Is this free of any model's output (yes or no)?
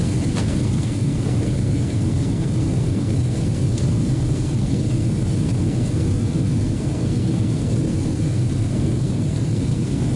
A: no